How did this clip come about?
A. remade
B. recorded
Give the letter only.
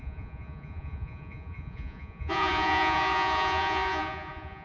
A